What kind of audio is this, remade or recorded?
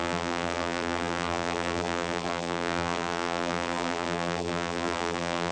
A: remade